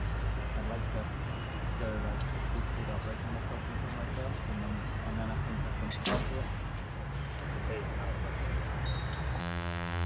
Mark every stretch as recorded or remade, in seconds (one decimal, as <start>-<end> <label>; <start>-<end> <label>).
0.0-9.4 recorded; 9.4-10.1 remade